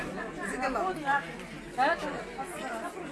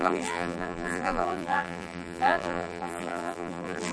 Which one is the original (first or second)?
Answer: first